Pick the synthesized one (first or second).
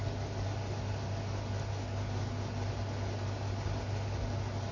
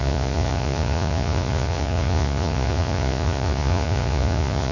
second